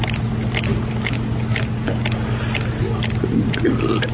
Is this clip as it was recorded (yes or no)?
yes